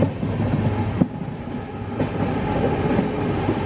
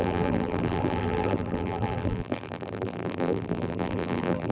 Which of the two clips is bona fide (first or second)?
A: first